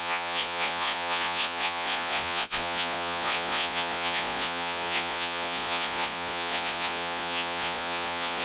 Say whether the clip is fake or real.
fake